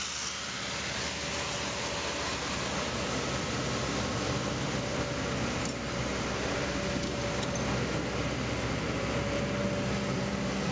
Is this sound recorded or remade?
recorded